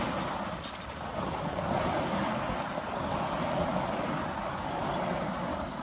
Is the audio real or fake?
real